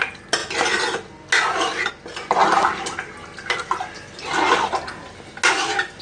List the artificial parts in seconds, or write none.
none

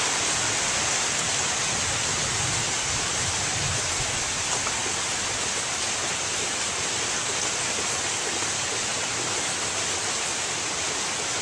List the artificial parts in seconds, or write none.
none